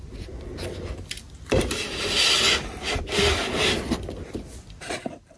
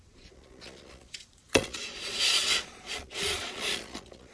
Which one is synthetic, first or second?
second